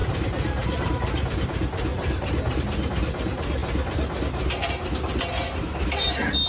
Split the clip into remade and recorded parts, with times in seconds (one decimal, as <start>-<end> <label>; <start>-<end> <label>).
0.0-0.9 remade; 0.9-1.9 recorded; 1.9-2.6 remade; 2.6-6.5 recorded